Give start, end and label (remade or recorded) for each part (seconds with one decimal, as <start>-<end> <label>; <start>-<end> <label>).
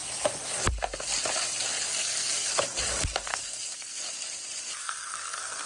0.0-1.9 recorded; 1.9-2.5 remade; 2.5-3.3 recorded; 3.3-4.0 remade; 4.0-4.8 recorded; 4.8-5.7 remade